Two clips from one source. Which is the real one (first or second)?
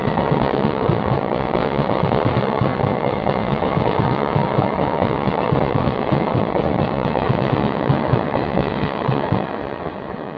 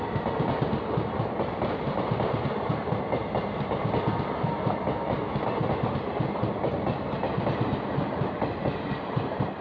second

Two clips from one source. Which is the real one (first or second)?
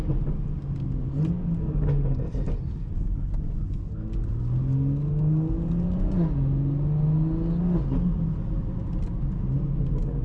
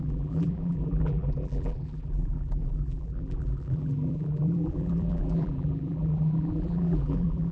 first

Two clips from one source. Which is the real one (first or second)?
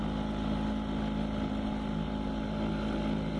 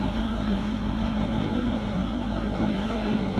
first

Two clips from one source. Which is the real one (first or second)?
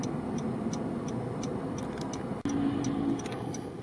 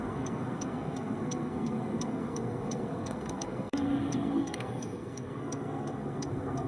first